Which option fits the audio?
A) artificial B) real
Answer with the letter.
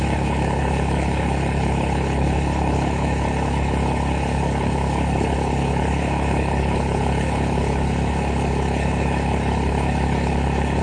A